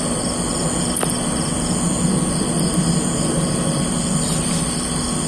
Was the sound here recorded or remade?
recorded